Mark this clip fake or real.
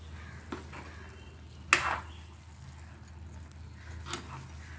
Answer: real